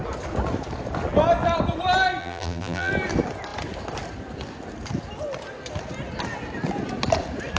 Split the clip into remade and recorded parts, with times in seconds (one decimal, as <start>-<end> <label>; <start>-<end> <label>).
0.0-2.2 recorded; 2.2-2.9 remade; 2.9-7.6 recorded